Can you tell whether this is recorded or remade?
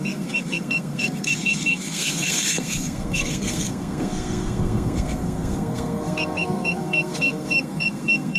remade